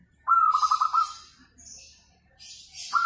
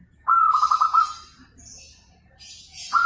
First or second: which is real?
first